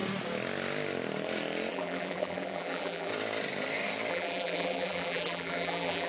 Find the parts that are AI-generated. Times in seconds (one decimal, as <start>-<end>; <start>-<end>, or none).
1.7-3.1; 4.1-6.1